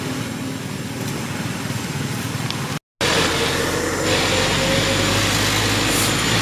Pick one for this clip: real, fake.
real